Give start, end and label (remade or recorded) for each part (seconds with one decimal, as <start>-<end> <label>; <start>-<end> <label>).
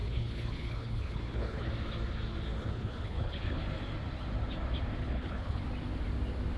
0.0-1.7 remade; 1.7-2.6 recorded; 2.6-3.6 remade; 3.6-5.0 recorded; 5.0-5.6 remade; 5.6-6.6 recorded